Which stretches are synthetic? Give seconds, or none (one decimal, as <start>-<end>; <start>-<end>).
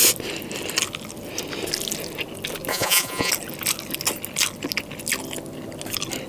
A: 2.7-3.3